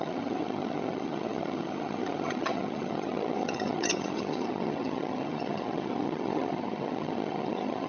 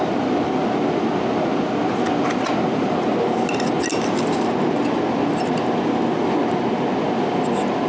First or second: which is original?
second